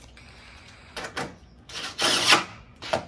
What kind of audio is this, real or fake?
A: fake